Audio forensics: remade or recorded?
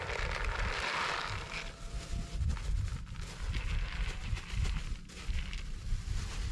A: recorded